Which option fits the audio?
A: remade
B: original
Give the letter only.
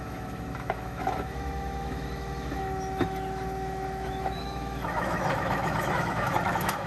A